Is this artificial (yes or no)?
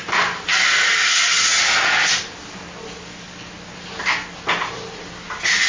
no